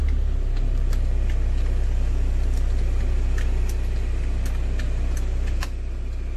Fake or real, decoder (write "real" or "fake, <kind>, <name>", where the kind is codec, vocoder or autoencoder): real